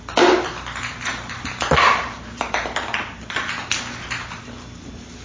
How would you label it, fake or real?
real